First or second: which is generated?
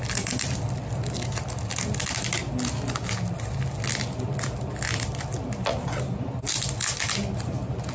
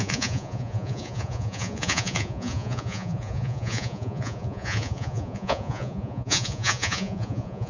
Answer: second